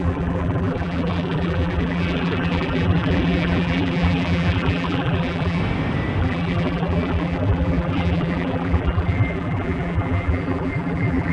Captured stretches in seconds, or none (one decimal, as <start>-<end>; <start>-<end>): 5.6-6.2